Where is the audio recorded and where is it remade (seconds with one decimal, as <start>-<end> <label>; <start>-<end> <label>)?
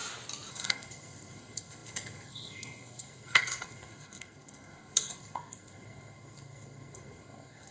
0.0-0.5 recorded; 0.5-7.7 remade